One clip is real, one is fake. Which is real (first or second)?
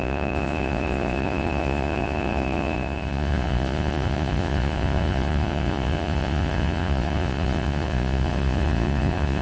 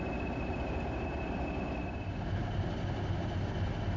second